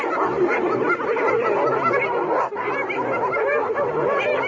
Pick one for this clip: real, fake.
real